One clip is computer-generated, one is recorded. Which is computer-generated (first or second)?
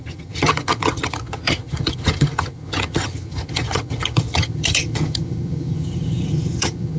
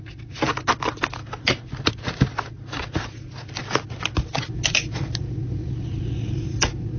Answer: first